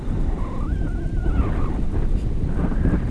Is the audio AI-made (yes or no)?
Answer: no